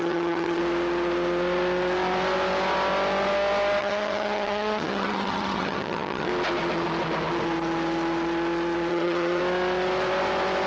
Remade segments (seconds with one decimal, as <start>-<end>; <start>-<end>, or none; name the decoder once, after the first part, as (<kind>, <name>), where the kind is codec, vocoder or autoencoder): 0.0-0.6 (vocoder, HiFi-GAN); 3.8-6.3; 8.9-9.4